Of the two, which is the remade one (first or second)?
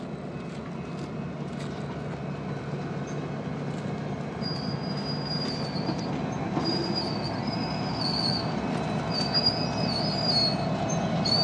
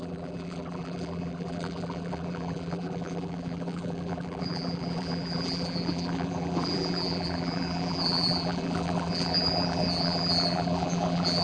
second